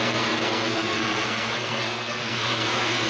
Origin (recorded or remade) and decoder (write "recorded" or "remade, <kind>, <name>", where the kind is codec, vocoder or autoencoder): remade, codec, SNAC